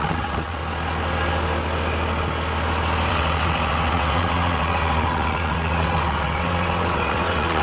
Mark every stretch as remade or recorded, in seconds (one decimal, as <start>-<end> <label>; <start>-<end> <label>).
0.0-0.6 remade; 0.6-3.1 recorded; 3.1-7.6 remade